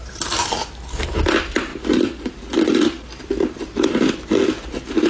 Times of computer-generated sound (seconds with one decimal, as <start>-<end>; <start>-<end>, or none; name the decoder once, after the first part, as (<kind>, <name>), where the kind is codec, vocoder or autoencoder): none